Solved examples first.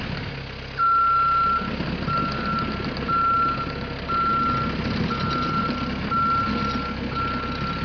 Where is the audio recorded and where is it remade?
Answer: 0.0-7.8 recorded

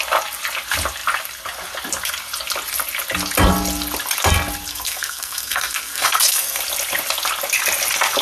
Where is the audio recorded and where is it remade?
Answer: 0.0-4.7 recorded; 4.7-6.6 remade; 6.6-8.2 recorded

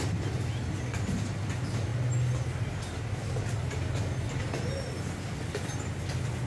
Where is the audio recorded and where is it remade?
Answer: 0.0-6.5 recorded

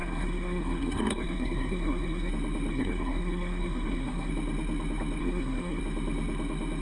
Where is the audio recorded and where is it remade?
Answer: 0.0-2.3 remade; 2.3-2.7 recorded; 2.7-4.3 remade; 4.3-5.2 recorded; 5.2-5.8 remade; 5.8-6.8 recorded

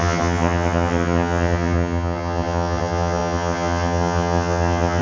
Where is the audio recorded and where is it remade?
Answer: 0.0-5.0 remade